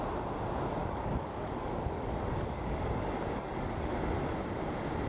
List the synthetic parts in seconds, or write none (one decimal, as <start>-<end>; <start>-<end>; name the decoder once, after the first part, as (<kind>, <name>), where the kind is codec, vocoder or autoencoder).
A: 0.8-3.9 (codec, DAC)

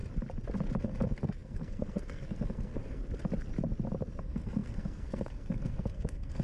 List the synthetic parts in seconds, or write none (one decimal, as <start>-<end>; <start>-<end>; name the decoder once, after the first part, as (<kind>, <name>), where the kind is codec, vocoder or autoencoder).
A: 0.8-3.0 (codec, SNAC); 4.1-6.4